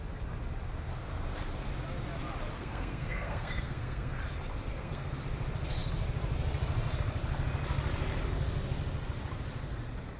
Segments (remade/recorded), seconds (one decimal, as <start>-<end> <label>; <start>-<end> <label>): 0.0-2.5 recorded; 2.5-4.2 remade; 4.2-4.7 recorded; 4.7-5.2 remade; 5.2-10.2 recorded